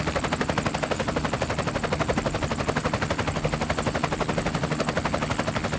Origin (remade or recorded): recorded